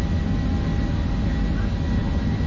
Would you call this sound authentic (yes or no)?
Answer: yes